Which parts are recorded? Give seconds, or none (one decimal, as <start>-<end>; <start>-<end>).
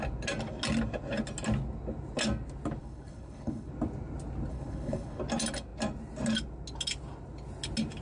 0.0-2.8; 3.7-4.5; 5.2-8.0